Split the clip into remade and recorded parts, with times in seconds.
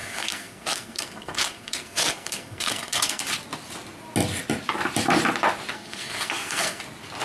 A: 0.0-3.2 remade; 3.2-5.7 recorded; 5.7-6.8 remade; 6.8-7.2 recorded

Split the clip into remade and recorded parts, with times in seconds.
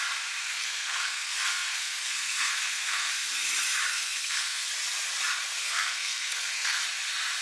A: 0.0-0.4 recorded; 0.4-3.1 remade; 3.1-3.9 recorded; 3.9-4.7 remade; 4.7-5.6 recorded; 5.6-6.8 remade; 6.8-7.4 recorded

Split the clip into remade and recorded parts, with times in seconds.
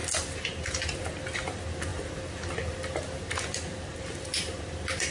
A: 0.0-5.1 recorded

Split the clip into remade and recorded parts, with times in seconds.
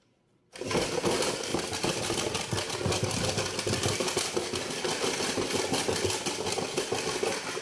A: 0.0-7.6 recorded